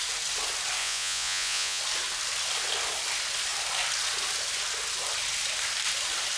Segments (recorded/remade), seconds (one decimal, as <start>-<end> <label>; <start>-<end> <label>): 0.0-0.8 recorded; 0.8-1.8 remade; 1.8-6.4 recorded